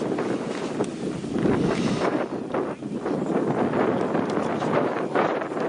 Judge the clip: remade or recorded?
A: recorded